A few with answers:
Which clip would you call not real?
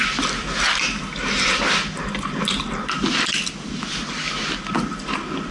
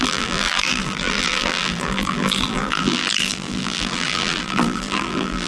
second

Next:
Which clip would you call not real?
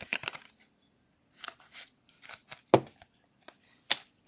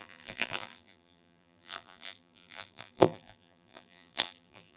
second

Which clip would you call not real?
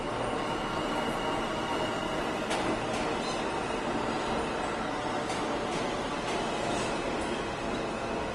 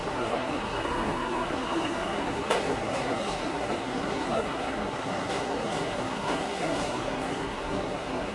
second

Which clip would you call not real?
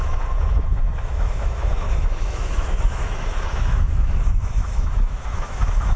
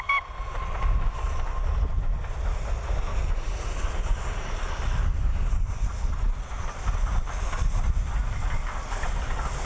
first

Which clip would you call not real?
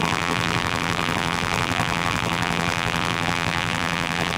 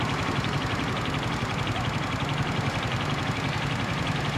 first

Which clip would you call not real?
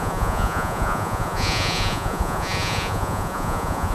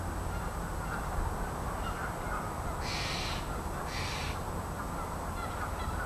first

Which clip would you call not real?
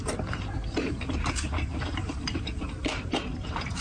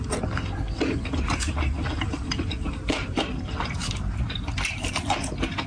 first